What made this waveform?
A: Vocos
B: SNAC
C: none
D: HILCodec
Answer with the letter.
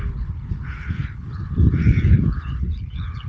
D